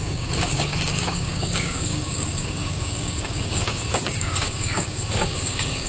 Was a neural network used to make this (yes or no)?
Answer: yes